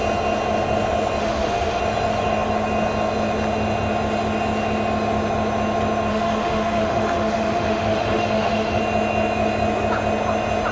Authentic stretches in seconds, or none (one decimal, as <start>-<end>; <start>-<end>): 0.0-1.2; 1.8-6.1; 8.8-10.7

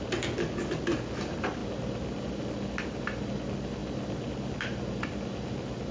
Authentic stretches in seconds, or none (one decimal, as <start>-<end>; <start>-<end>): 0.0-5.9

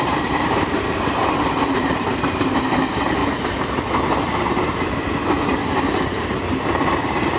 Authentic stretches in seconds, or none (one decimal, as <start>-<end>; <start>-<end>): 3.2-7.4

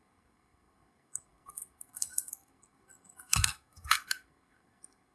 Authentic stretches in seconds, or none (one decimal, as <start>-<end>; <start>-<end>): none

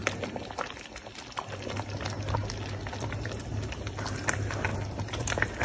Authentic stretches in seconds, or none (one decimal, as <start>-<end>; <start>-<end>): 0.0-4.7

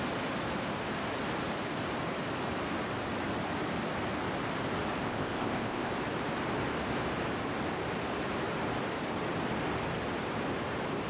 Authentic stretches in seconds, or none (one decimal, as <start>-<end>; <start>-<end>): 0.0-5.0; 5.9-11.1

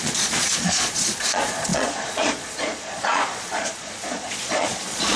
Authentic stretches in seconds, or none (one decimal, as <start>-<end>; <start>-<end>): none

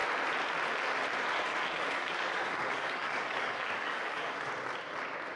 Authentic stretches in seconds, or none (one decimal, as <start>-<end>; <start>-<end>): 0.0-1.3; 4.5-5.4